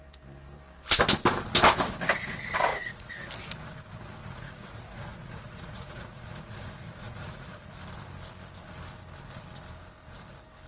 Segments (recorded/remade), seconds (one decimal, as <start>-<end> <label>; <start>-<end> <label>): 0.0-2.7 recorded; 2.7-3.3 remade; 3.3-4.2 recorded; 4.2-7.7 remade; 7.7-10.7 recorded